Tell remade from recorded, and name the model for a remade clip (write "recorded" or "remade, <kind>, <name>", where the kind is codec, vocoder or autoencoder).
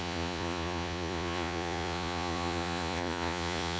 remade, vocoder, Vocos